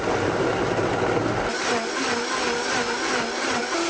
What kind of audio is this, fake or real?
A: real